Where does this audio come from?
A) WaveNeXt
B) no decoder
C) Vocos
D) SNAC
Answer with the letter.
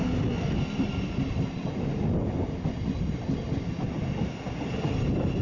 B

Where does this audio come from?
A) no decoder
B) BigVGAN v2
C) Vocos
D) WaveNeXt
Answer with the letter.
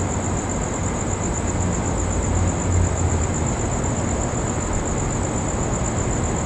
A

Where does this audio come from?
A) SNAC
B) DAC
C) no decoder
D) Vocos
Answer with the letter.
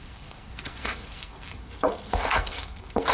A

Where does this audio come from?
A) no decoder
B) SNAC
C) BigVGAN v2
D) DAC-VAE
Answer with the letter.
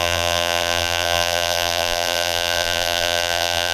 C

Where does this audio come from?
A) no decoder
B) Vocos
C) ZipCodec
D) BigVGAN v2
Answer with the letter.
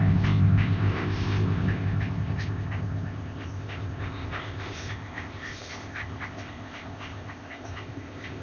C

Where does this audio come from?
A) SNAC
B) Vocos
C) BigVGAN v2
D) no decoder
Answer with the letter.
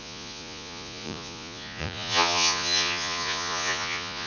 B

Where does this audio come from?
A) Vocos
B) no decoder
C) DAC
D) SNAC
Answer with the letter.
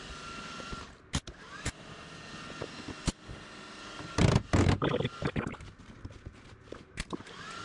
B